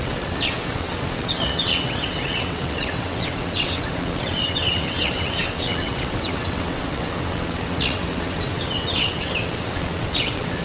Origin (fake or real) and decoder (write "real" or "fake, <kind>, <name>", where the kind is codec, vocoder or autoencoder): fake, vocoder, WaveNeXt